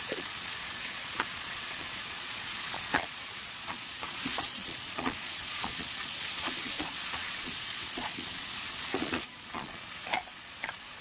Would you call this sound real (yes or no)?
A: no